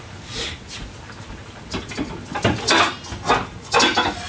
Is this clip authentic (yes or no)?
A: yes